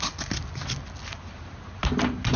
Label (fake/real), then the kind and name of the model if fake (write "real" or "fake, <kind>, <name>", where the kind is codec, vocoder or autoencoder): real